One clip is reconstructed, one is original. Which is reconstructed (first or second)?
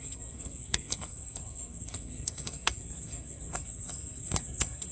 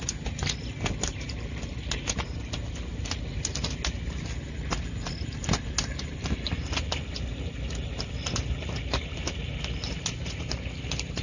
first